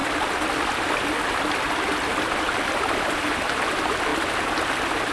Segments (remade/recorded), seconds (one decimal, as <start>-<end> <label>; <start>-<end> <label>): 0.0-5.1 recorded